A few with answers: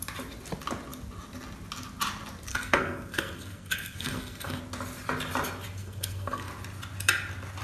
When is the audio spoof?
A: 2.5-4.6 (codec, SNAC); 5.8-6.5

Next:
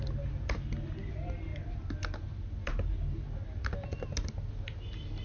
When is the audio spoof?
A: none

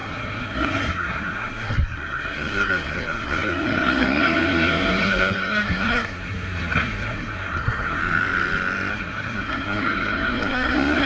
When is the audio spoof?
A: 0.0-8.0 (codec, SNAC); 8.9-11.1

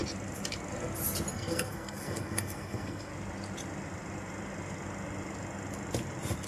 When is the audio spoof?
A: 1.3-3.1 (codec, SNAC)

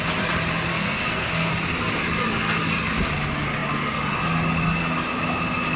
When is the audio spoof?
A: 0.7-1.5 (codec, SNAC)

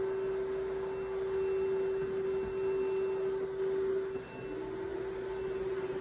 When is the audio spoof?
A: none